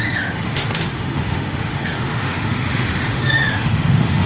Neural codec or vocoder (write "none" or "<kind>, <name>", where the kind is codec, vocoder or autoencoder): autoencoder, DAC-VAE